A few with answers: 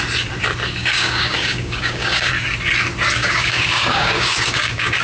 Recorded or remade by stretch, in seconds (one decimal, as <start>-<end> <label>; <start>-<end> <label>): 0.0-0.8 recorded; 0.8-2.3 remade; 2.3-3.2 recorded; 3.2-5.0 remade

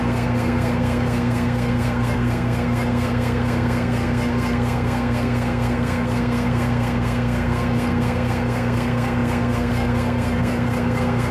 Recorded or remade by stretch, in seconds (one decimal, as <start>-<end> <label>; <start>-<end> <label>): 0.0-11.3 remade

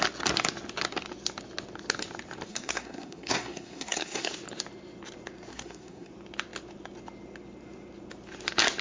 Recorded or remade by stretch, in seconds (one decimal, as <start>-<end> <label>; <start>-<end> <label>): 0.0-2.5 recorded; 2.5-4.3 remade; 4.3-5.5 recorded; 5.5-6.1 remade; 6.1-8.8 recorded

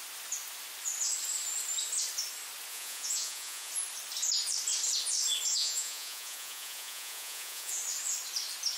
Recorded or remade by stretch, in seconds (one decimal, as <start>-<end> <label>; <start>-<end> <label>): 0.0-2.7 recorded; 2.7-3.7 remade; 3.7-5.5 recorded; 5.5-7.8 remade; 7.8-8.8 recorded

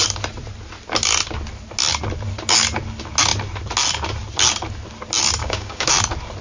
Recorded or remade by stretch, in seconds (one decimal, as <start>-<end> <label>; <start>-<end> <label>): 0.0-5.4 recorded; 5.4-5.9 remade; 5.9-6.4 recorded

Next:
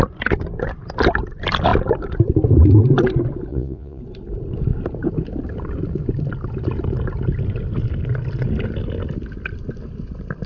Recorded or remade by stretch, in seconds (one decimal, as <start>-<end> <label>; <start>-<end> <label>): 0.0-3.5 recorded; 3.5-4.0 remade; 4.0-10.5 recorded